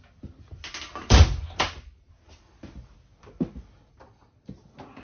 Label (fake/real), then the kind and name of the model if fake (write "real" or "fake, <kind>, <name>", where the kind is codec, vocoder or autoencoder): real